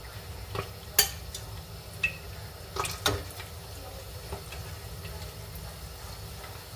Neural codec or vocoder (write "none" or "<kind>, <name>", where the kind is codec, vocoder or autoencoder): none